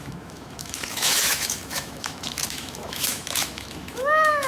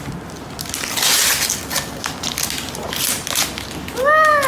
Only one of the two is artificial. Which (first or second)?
first